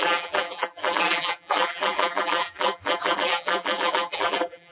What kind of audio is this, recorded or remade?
remade